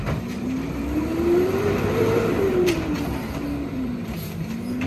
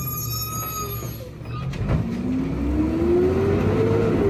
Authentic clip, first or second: second